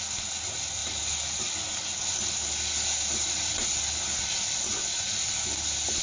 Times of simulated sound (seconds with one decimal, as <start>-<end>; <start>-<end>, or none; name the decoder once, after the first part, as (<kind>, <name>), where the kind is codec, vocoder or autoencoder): none